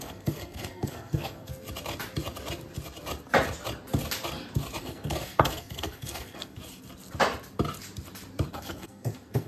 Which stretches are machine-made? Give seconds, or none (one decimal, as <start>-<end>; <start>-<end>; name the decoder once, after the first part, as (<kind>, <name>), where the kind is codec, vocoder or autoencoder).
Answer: 0.0-1.5 (codec, SNAC); 4.8-6.6; 8.5-9.5